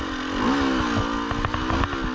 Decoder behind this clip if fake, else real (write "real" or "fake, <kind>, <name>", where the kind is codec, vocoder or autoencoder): real